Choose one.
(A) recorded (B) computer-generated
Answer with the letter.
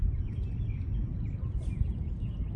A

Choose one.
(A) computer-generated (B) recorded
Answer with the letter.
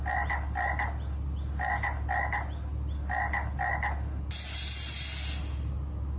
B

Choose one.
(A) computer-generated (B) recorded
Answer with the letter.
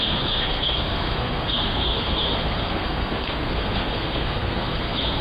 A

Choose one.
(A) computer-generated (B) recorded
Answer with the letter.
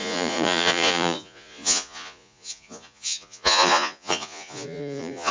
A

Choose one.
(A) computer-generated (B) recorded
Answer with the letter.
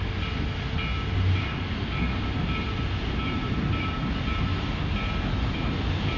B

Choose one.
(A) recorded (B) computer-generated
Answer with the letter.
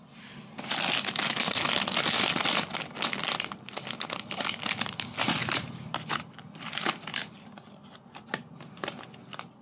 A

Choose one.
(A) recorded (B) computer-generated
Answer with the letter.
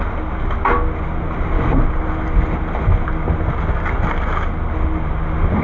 A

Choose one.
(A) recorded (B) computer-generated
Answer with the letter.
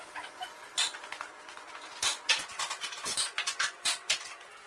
B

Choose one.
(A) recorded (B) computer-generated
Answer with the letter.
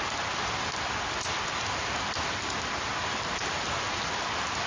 A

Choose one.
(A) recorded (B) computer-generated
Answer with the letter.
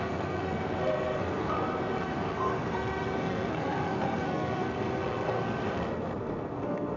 B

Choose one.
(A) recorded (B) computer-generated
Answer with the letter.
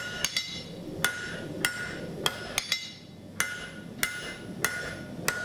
A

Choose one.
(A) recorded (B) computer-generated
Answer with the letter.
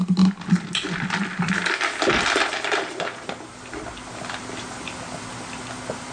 A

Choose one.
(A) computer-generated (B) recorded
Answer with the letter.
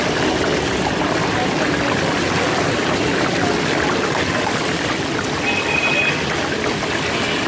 B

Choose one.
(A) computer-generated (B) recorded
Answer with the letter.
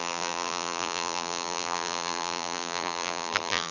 A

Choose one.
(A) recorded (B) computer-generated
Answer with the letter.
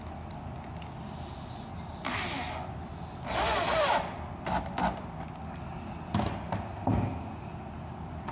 A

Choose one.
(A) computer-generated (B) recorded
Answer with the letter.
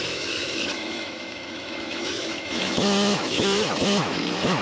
A